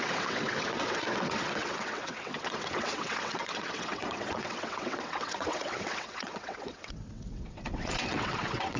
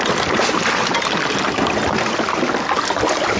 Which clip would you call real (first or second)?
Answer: second